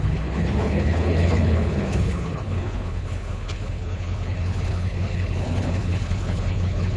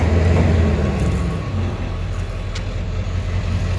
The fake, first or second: first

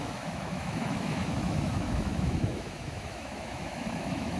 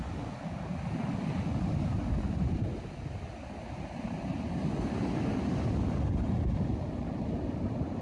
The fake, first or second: first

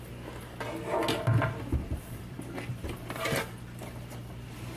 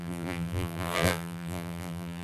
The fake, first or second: second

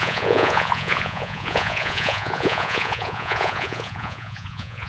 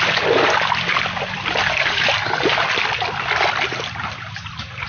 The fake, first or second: first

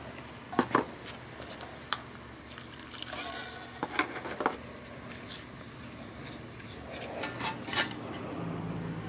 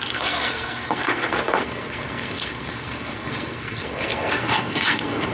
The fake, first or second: second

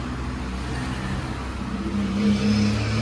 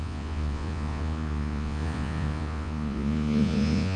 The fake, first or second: second